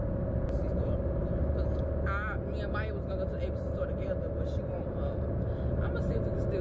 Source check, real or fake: real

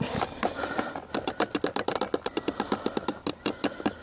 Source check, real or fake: real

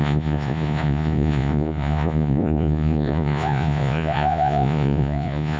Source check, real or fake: fake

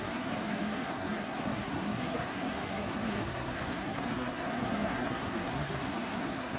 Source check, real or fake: fake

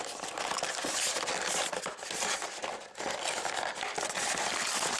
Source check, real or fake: real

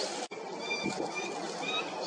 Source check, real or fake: real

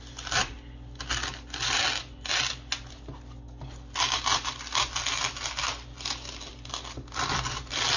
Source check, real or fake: real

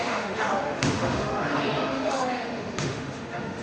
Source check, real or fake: fake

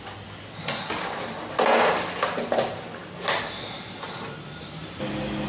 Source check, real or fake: real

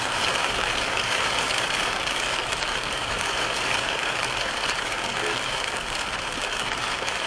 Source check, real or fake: fake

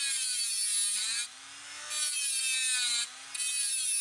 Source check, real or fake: real